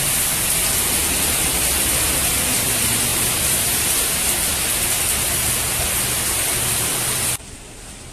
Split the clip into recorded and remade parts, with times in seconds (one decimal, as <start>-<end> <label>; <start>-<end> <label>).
0.0-8.1 recorded

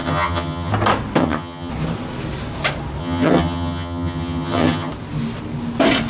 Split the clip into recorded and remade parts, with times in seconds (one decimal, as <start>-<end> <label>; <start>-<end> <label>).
0.0-0.7 remade; 0.7-1.2 recorded; 1.2-1.7 remade; 1.7-3.0 recorded; 3.0-4.9 remade; 4.9-6.1 recorded